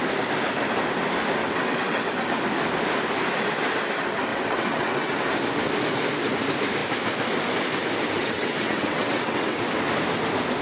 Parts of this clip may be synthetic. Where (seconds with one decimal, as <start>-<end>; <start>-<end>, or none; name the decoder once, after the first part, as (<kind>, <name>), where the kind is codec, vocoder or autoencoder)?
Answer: 1.4-2.1 (vocoder, WaveNeXt); 4.3-5.2; 8.2-9.6